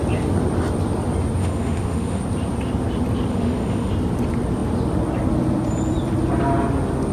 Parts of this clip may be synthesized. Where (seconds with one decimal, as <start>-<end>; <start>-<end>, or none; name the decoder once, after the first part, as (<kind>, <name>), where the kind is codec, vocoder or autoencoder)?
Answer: 1.4-2.2 (autoencoder, DAC-VAE); 3.3-3.9